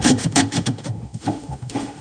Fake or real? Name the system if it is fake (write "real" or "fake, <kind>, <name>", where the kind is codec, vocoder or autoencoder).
fake, autoencoder, DAC-VAE